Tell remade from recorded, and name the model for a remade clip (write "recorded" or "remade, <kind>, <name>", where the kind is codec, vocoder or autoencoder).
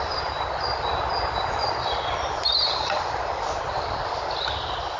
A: recorded